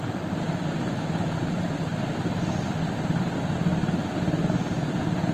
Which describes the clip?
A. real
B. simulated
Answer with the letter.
A